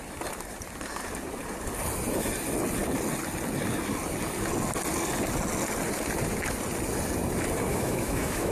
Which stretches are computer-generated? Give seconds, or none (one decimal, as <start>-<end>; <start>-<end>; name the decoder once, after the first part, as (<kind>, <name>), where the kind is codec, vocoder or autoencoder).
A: 7.7-8.5 (autoencoder, DAC-VAE)